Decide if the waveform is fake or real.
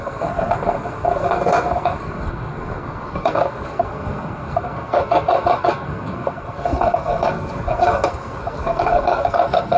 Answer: fake